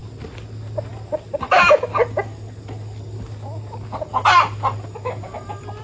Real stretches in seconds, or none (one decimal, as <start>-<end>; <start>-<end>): 0.0-5.8